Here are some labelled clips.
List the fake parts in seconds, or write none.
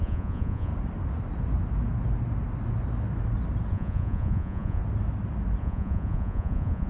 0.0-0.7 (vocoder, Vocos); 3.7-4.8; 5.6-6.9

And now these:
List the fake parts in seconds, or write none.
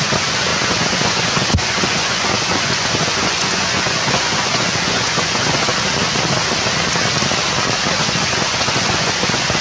0.0-5.7 (vocoder, Vocos); 8.0-9.6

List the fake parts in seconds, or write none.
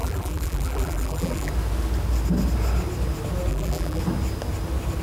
0.0-1.5 (vocoder, BigVGAN v2); 3.5-4.0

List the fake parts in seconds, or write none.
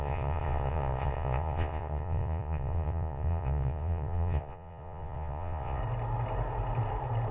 0.0-5.8 (vocoder, Vocos)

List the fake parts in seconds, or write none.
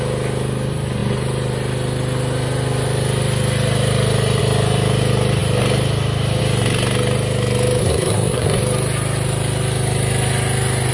7.8-8.6 (codec, SNAC)